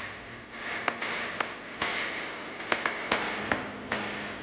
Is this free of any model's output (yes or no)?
yes